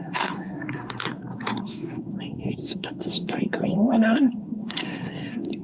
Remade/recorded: remade